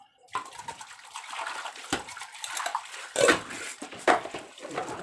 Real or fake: real